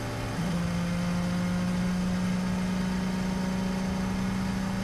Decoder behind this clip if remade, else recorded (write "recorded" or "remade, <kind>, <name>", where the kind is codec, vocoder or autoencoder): recorded